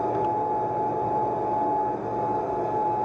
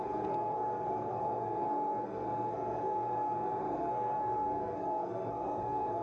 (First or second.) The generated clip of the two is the second